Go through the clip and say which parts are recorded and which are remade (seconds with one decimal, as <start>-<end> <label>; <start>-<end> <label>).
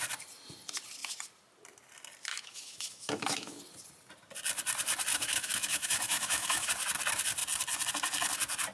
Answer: 0.0-2.3 recorded; 2.3-3.6 remade; 3.6-5.1 recorded; 5.1-6.7 remade; 6.7-8.7 recorded